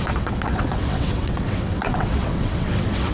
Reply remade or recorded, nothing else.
remade